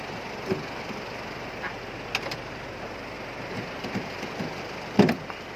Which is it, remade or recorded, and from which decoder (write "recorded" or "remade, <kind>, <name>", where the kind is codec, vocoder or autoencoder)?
recorded